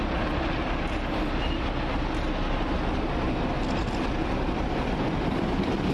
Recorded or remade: recorded